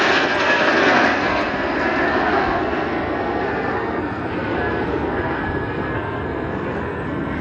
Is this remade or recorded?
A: remade